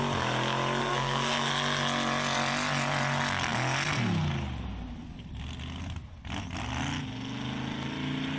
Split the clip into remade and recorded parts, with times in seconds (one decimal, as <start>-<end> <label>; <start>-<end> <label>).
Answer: 0.0-0.8 recorded; 0.8-1.5 remade; 1.5-8.4 recorded